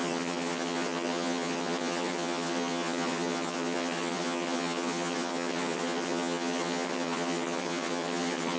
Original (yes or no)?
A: no